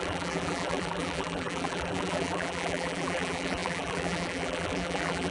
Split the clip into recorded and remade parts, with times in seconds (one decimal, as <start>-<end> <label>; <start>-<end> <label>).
0.0-5.3 remade